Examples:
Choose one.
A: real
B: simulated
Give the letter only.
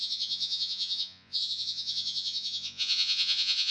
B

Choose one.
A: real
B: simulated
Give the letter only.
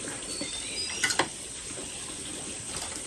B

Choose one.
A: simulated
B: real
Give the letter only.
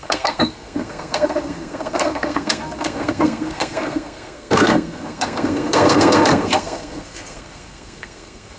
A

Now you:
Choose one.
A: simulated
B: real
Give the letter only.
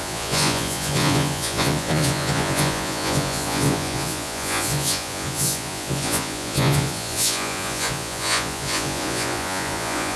A